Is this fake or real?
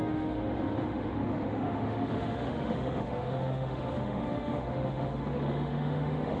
fake